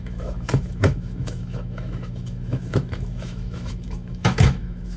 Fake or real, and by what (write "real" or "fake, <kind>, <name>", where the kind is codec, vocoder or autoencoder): fake, autoencoder, DAC-VAE